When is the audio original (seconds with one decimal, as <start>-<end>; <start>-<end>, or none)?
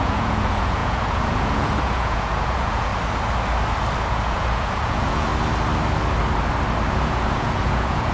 2.9-4.1; 5.3-6.9